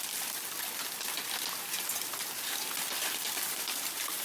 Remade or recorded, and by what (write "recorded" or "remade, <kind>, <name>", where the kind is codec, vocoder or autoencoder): recorded